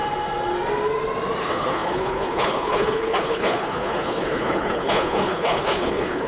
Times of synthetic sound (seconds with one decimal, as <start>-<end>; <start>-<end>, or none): 1.4-6.3